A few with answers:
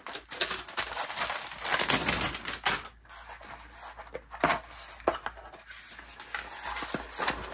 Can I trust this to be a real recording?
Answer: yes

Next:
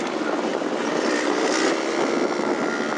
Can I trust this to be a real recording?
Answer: yes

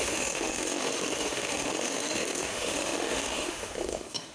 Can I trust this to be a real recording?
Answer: no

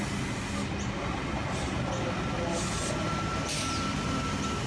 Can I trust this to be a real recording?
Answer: yes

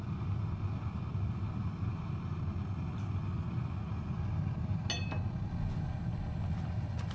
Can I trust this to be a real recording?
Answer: yes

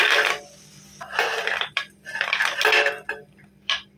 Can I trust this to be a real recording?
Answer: no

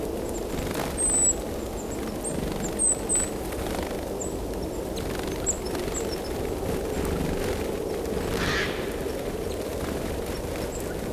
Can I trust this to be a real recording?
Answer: yes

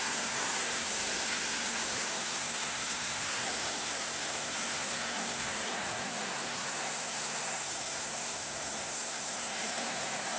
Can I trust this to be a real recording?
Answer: no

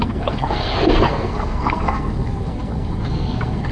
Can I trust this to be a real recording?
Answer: no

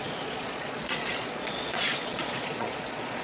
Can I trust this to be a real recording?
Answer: no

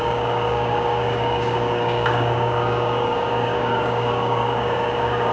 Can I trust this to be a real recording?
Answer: no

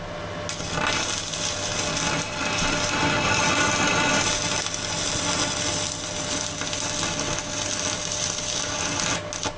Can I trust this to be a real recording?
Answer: yes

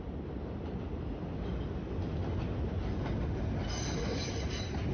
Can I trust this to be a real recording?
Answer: yes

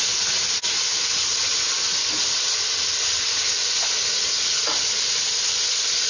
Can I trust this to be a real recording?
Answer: yes